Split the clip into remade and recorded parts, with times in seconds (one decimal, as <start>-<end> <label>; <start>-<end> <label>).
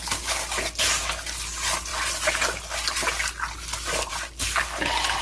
0.0-5.2 recorded